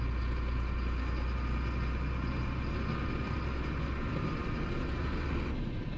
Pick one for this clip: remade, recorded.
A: recorded